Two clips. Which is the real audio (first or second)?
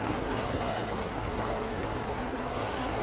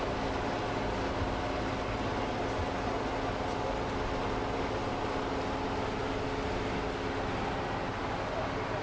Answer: second